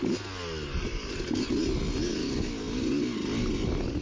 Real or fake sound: real